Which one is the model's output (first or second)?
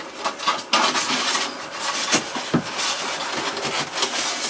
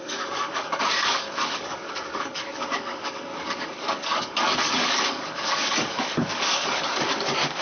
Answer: second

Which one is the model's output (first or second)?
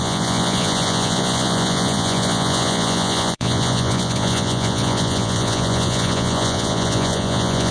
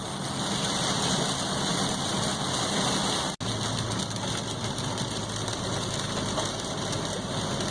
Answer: first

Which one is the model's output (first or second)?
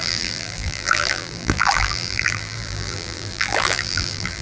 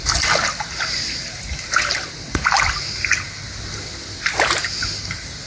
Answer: first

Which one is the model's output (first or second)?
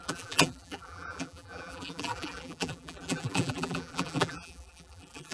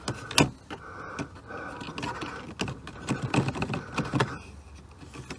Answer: first